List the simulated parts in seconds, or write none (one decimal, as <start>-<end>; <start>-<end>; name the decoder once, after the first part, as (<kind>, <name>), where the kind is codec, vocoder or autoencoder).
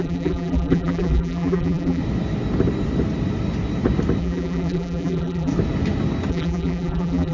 0.0-2.0 (vocoder, BigVGAN v2); 4.2-5.5; 6.3-7.3